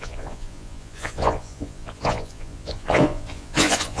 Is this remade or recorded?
remade